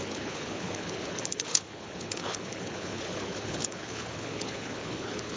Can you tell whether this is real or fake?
fake